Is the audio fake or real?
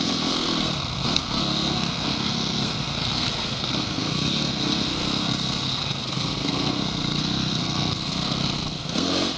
fake